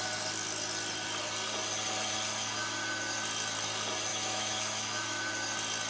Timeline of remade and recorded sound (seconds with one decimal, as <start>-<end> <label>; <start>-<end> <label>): 0.0-4.1 recorded; 4.1-5.3 remade; 5.3-5.9 recorded